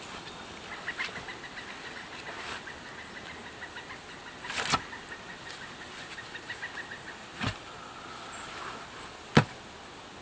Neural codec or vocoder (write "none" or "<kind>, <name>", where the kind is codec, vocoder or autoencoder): none